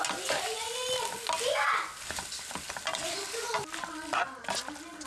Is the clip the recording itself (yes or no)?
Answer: yes